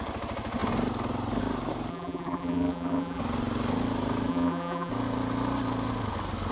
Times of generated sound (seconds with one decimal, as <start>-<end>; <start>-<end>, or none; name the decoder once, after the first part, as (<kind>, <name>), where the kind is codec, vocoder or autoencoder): 1.9-3.2 (vocoder, BigVGAN v2); 4.3-4.9